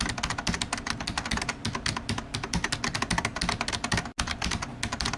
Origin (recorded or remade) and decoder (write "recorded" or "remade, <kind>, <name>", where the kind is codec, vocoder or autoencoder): recorded